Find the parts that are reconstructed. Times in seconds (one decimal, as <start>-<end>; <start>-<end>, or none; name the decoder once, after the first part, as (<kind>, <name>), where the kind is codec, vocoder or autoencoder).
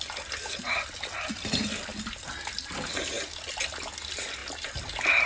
none